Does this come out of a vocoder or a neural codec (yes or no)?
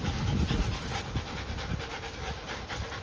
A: no